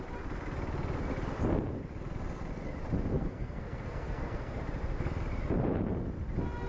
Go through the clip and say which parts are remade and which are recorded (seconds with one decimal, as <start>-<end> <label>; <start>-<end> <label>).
0.0-3.1 recorded; 3.1-4.6 remade; 4.6-6.7 recorded